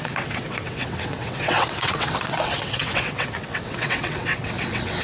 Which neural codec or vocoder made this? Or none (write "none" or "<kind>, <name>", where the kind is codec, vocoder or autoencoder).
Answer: vocoder, WaveNeXt